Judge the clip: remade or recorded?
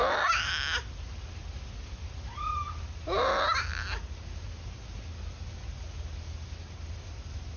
recorded